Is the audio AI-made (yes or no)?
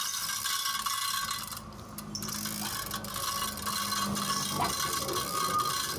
no